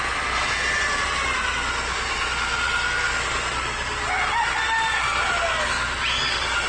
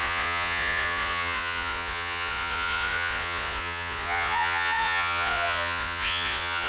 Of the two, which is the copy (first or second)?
second